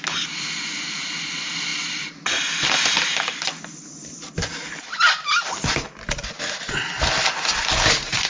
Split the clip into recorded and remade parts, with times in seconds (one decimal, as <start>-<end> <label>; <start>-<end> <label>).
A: 0.0-8.3 recorded